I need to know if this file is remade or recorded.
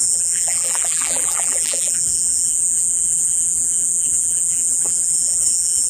remade